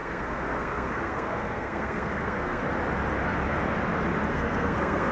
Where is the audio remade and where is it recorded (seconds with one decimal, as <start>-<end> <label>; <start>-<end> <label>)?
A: 0.0-2.6 remade; 2.6-4.3 recorded; 4.3-5.1 remade